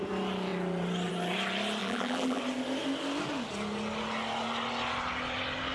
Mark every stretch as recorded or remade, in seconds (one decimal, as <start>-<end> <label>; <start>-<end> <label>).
0.0-1.8 recorded; 1.8-2.4 remade; 2.4-5.7 recorded